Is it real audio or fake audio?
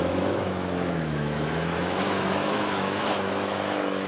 fake